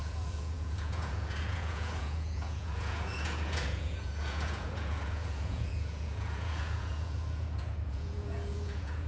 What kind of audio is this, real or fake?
fake